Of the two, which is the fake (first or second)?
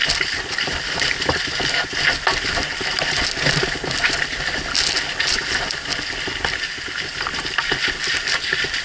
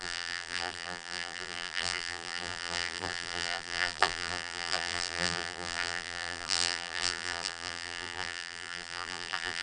second